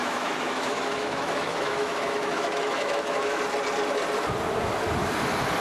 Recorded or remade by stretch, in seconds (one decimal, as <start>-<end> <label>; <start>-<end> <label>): 0.0-3.4 remade; 3.4-5.6 recorded